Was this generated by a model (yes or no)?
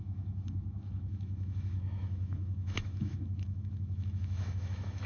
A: yes